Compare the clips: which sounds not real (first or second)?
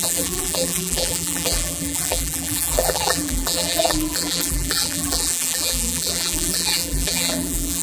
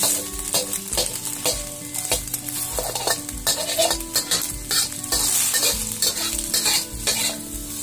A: first